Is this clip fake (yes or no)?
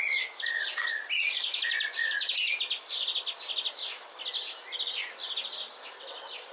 no